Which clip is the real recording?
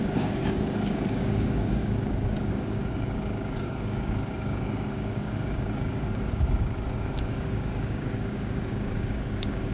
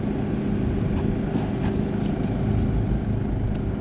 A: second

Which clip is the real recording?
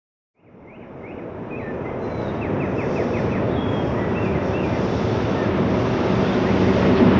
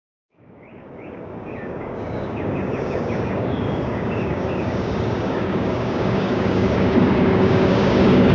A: first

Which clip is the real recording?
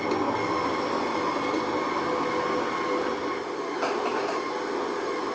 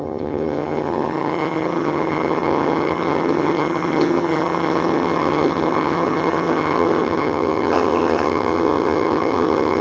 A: first